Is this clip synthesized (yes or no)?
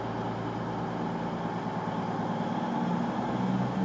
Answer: no